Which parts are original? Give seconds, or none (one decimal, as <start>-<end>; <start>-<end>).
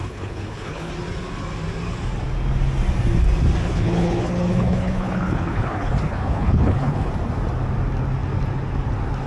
0.9-3.6; 7.1-9.3